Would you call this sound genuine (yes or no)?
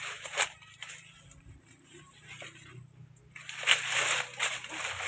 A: yes